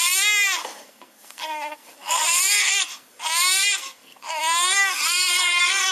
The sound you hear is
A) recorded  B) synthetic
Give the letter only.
B